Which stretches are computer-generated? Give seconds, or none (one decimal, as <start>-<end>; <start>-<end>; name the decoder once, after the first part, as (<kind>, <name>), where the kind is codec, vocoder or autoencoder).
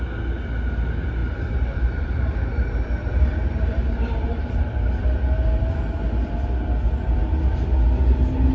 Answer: 1.2-4.6 (vocoder, BigVGAN v2)